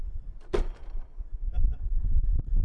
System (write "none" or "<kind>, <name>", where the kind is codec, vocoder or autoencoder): vocoder, BigVGAN v2